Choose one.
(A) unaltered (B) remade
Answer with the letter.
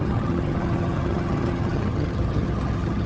B